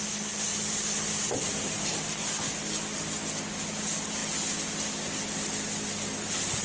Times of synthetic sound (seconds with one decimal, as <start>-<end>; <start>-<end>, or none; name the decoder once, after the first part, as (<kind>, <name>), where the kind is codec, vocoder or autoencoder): 0.5-1.9 (vocoder, BigVGAN v2)